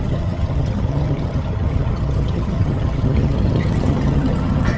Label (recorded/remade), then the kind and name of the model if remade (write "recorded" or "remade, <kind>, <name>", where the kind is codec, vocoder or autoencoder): remade, vocoder, HiFi-GAN